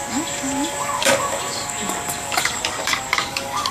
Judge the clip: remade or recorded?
remade